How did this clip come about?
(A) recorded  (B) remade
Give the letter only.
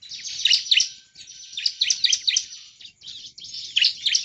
A